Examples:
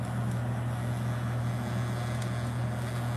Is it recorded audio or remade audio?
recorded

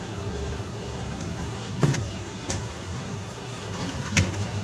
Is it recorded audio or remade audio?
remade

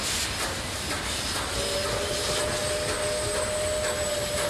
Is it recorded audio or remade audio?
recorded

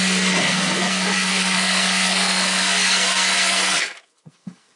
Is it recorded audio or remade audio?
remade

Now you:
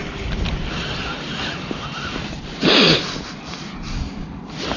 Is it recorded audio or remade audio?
recorded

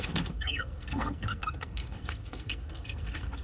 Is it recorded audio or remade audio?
remade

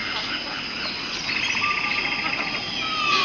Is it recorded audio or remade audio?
recorded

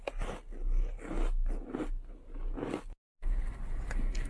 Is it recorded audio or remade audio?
recorded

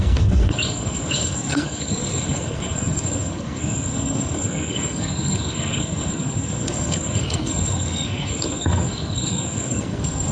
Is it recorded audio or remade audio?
remade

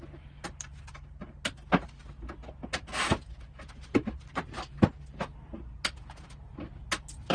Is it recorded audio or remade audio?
recorded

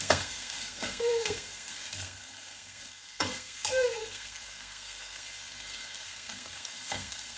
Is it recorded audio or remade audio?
remade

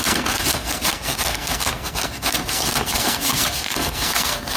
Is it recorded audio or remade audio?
remade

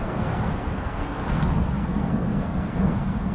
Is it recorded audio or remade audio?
remade